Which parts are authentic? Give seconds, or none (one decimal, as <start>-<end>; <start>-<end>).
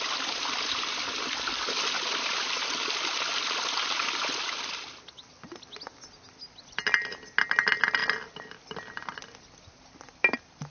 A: 0.0-10.7